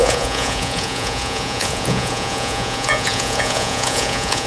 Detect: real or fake fake